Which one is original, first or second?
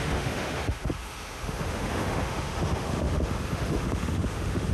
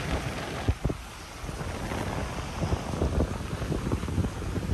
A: second